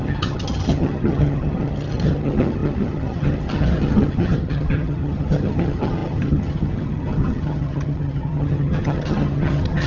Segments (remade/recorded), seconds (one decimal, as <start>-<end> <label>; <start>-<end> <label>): 0.0-9.9 remade